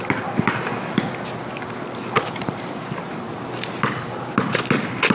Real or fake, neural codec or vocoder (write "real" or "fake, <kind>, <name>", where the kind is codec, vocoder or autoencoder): fake, vocoder, BigVGAN v2